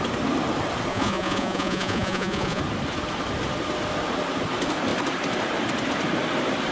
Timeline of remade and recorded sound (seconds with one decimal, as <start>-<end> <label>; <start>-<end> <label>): 0.0-0.9 recorded; 0.9-2.6 remade; 2.6-6.7 recorded